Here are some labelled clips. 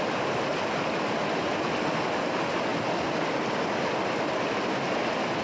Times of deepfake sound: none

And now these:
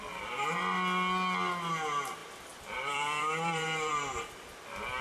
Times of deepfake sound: 2.2-3.9 (vocoder, BigVGAN v2)